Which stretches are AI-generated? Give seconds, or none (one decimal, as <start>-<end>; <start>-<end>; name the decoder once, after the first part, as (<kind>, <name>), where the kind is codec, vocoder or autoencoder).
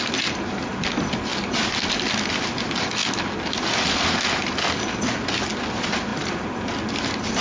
none